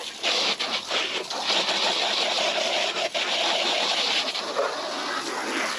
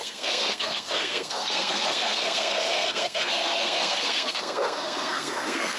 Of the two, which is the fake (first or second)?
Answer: second